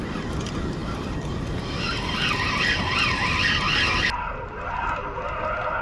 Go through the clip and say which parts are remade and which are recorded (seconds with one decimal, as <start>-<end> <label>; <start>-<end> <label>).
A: 0.0-5.8 recorded